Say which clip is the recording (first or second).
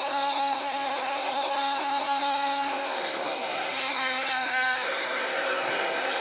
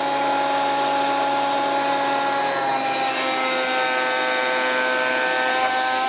second